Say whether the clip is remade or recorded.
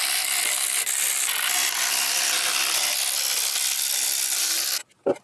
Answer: recorded